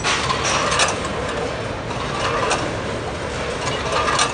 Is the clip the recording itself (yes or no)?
yes